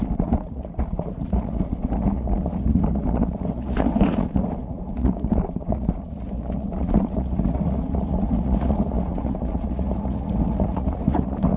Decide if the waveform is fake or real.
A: fake